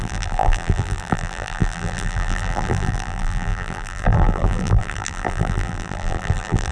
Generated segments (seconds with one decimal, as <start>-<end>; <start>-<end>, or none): 0.0-6.7